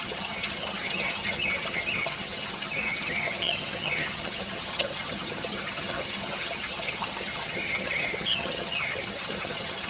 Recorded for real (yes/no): no